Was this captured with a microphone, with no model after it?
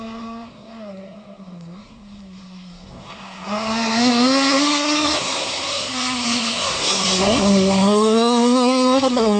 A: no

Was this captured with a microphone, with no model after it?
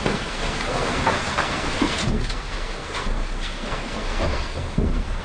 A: no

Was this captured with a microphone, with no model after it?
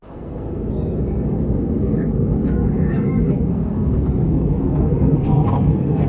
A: no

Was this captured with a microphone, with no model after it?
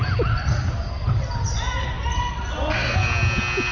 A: yes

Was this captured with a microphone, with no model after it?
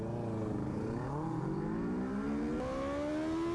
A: yes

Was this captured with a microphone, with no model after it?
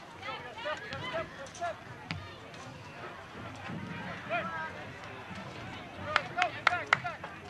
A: yes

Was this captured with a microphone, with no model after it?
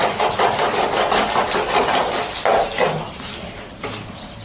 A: yes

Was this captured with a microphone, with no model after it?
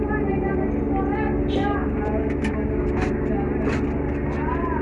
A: yes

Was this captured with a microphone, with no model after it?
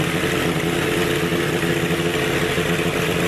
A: yes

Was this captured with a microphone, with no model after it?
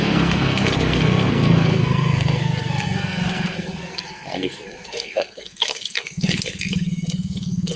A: no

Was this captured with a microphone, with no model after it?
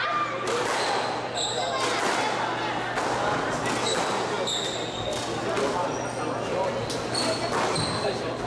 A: yes